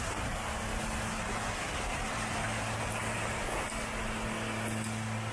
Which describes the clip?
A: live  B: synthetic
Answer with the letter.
A